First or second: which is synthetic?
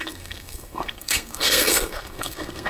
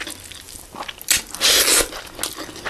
first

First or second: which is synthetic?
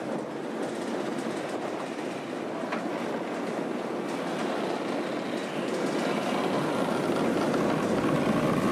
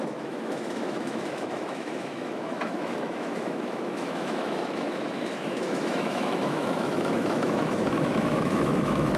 second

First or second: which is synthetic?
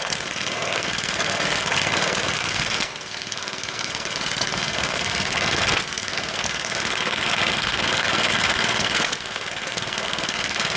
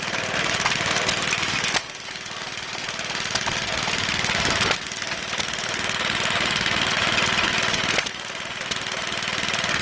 first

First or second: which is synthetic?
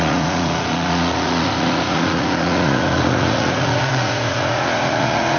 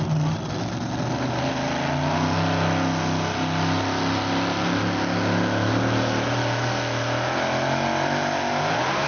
first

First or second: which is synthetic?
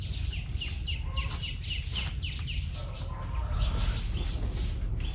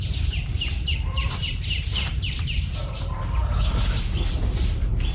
second